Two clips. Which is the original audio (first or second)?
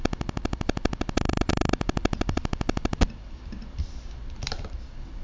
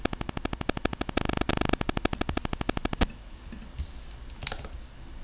second